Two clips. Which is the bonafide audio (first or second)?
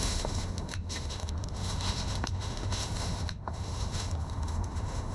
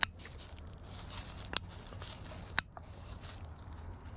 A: second